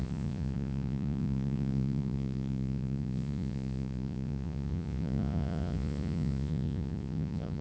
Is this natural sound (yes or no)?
no